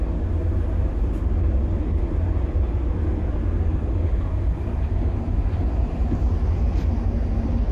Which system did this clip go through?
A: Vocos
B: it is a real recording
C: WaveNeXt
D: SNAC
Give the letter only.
B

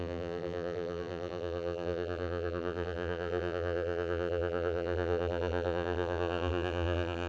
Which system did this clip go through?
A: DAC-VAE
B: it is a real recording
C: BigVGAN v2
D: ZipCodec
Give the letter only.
C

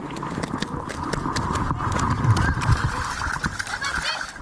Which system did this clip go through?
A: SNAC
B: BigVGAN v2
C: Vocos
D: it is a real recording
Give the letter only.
D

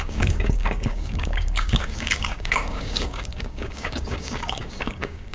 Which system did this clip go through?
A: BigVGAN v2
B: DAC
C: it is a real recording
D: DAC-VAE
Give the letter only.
B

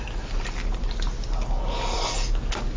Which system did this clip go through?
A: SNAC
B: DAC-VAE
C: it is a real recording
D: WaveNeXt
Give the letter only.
C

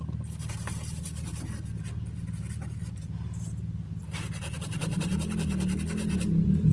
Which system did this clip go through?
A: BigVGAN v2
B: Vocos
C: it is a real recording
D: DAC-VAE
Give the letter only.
C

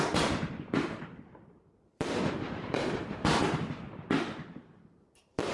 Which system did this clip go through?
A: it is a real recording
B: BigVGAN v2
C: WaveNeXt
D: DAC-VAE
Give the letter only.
B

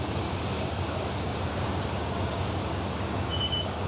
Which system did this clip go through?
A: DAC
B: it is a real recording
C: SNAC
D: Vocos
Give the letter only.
A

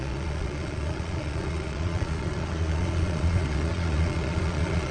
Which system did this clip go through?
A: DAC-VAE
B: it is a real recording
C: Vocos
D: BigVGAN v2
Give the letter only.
C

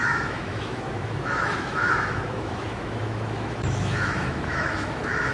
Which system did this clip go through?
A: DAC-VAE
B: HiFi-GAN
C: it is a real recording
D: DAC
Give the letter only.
A